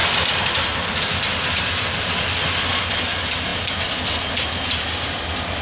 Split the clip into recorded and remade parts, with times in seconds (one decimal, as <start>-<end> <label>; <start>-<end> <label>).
0.0-5.6 recorded